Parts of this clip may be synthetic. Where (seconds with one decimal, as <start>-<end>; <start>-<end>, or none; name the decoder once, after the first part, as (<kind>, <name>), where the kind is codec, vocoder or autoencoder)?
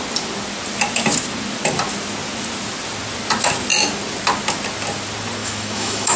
5.4-6.2 (autoencoder, DAC-VAE)